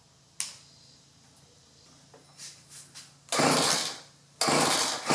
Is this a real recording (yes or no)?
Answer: yes